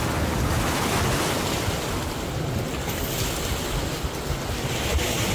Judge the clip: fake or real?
real